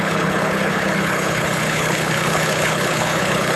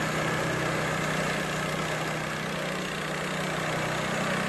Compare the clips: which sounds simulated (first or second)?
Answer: first